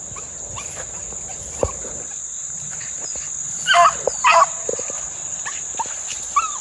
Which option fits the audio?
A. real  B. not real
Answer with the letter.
A